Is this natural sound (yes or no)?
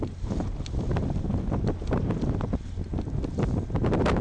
yes